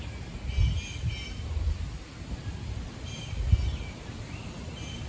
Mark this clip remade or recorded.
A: recorded